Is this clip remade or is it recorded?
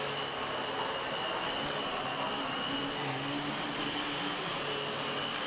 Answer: recorded